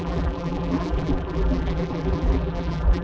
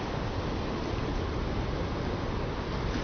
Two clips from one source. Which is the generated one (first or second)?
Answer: first